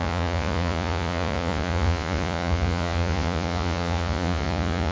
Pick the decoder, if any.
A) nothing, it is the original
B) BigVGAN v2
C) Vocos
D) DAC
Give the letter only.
C